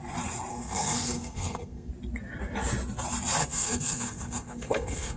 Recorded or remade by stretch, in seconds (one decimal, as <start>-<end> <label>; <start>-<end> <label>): 0.0-0.5 recorded; 0.5-1.9 remade; 1.9-3.4 recorded; 3.4-5.2 remade